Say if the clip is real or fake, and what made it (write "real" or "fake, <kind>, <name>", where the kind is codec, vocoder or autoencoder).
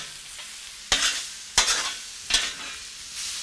real